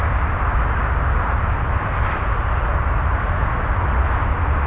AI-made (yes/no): no